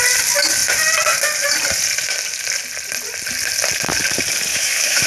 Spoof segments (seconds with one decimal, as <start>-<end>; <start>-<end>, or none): 4.5-5.1